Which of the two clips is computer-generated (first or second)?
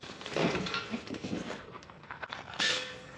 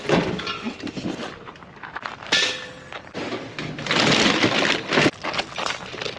first